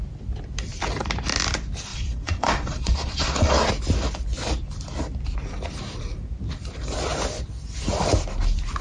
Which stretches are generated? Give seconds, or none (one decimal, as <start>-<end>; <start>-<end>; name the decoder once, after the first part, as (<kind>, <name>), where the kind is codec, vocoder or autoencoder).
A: 1.9-3.7 (vocoder, Vocos)